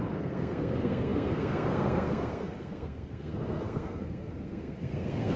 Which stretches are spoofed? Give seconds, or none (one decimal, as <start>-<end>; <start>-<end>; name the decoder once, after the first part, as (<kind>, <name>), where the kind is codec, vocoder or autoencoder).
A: 0.0-5.4 (codec, SNAC)